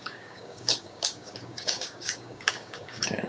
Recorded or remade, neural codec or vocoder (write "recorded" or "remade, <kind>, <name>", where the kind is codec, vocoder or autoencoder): remade, codec, DAC